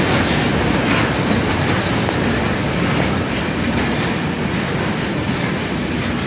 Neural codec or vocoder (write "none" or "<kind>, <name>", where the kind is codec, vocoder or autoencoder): none